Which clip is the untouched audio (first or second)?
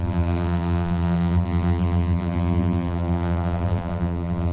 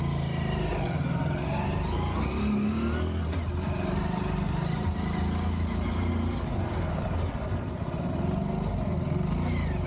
second